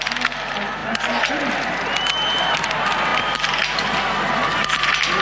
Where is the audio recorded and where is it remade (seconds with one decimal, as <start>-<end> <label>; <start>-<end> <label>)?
0.0-0.8 recorded; 0.8-1.3 remade; 1.3-5.2 recorded